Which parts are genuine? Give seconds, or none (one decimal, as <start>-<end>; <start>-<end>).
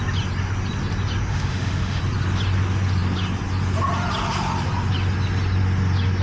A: 0.0-1.3; 2.0-6.2